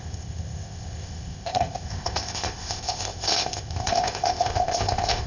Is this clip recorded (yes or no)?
no